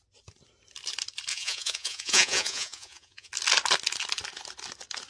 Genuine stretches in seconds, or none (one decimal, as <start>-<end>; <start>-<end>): 0.0-1.3; 3.3-5.1